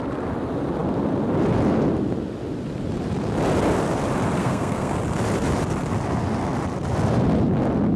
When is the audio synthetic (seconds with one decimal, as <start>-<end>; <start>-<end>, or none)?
4.4-5.0